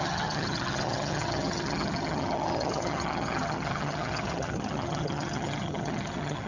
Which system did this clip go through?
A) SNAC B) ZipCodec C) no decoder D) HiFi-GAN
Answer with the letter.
D